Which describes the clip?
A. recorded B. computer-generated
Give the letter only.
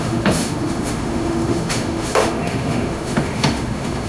B